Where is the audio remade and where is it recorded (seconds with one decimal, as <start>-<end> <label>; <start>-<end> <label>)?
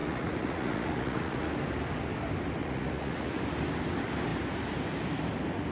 0.0-1.5 remade; 1.5-2.6 recorded; 2.6-3.4 remade; 3.4-5.7 recorded